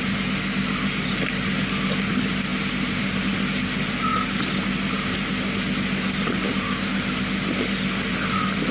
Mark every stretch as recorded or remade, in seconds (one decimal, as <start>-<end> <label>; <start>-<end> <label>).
0.0-8.7 recorded